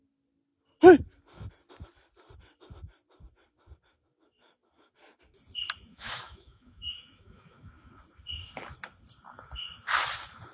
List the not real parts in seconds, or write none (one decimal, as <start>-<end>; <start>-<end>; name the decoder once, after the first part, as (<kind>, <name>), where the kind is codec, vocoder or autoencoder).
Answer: 5.9-7.9 (autoencoder, DAC-VAE)